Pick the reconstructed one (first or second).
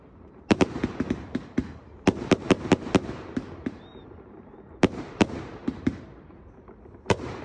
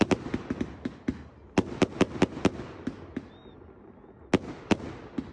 first